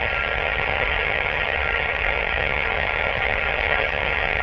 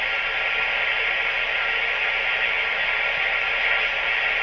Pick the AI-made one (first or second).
first